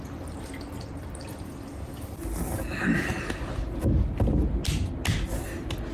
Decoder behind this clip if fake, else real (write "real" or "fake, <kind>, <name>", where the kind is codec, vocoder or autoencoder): real